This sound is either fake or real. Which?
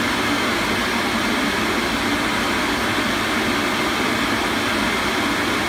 real